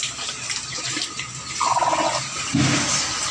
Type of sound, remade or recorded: recorded